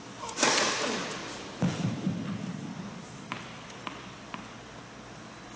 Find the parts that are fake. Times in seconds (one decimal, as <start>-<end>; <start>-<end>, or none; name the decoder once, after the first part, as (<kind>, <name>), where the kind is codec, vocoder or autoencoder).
1.2-4.2 (vocoder, BigVGAN v2)